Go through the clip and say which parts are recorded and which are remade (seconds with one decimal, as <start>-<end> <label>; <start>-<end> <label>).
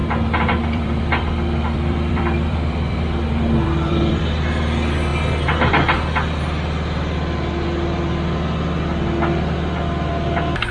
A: 0.0-4.2 remade; 4.2-10.7 recorded